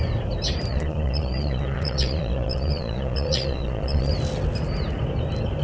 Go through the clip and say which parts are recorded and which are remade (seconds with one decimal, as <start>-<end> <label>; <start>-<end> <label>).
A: 0.0-0.7 recorded; 0.7-4.1 remade; 4.1-5.6 recorded